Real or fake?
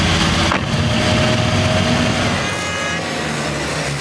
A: real